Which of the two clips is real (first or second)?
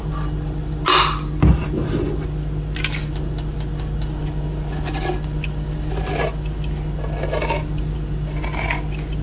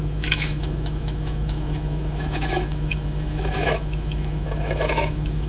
first